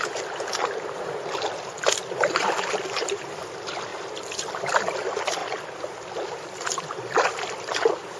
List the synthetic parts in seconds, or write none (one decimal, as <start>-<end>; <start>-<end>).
0.0-3.9; 4.5-5.4; 6.8-8.2